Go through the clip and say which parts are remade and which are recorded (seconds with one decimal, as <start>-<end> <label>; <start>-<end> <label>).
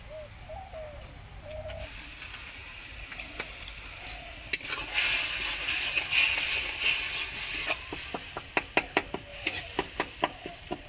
0.0-9.3 recorded; 9.3-10.0 remade; 10.0-10.9 recorded